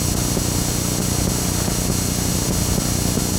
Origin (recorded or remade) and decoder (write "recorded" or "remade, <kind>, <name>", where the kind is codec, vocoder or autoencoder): recorded